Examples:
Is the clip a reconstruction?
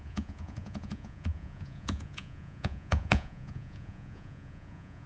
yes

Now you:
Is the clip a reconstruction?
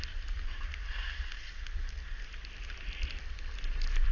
no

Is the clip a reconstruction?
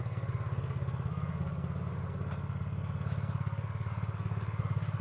yes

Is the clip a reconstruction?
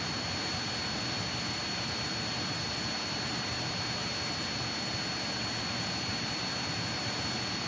no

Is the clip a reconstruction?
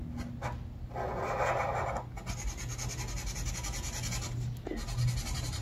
no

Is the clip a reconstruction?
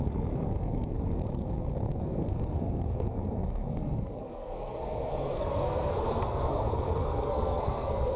yes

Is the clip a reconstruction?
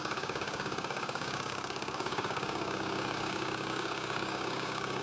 yes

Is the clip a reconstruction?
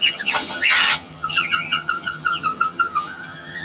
yes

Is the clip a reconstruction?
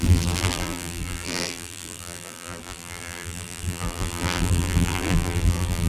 yes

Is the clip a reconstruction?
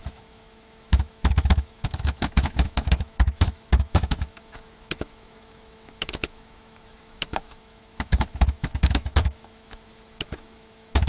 yes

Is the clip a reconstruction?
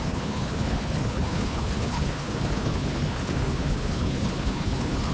yes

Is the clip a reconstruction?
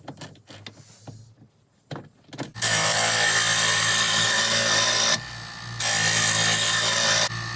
no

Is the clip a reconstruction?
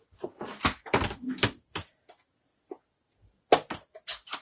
no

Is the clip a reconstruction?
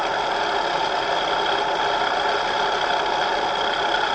no